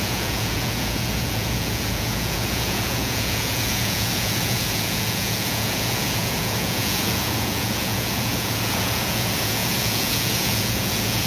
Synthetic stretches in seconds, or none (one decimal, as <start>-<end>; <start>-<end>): 0.0-11.3